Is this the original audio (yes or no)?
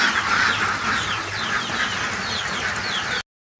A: yes